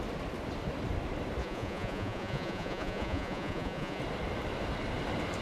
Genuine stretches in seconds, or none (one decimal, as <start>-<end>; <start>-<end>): 0.0-1.4; 4.0-5.4